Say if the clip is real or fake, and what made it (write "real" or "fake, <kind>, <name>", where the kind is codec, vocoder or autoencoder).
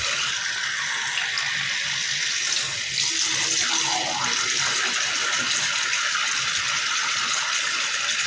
real